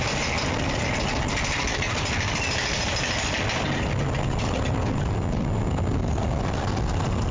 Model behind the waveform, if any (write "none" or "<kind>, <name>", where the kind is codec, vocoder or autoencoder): none